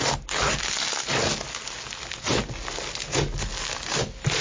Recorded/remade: recorded